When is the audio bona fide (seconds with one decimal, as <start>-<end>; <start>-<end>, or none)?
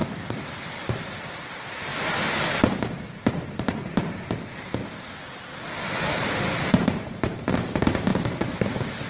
1.9-6.7